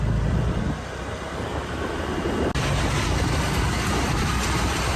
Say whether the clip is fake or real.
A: real